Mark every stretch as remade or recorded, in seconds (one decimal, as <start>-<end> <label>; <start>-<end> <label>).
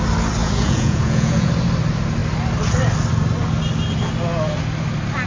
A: 0.0-0.4 recorded; 0.4-1.5 remade; 1.5-5.3 recorded